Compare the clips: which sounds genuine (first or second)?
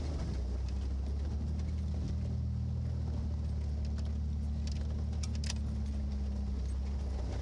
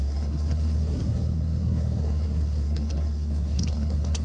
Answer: first